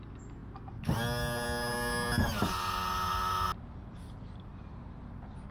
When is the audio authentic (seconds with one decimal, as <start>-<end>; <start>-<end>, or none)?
0.0-5.5